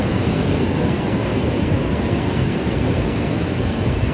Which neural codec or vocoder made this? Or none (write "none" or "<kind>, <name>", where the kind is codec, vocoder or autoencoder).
codec, SNAC